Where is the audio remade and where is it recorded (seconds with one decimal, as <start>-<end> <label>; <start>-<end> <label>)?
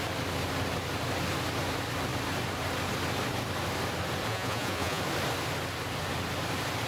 0.0-4.3 recorded; 4.3-5.0 remade; 5.0-6.9 recorded